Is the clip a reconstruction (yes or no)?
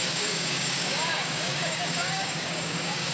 yes